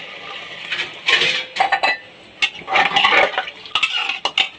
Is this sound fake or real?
real